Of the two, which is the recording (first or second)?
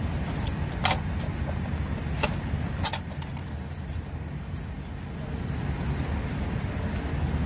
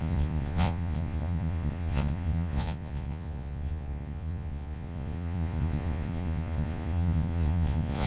first